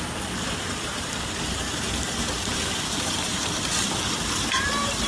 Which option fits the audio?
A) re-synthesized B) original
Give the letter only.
A